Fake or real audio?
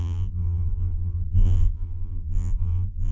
fake